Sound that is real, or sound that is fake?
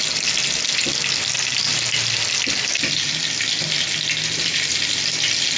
real